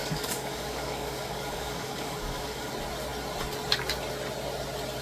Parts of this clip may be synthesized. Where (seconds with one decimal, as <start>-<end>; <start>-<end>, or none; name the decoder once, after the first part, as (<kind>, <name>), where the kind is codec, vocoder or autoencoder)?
0.0-2.7 (codec, DAC)